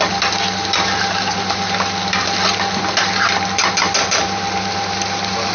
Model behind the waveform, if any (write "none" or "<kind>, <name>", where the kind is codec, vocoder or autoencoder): none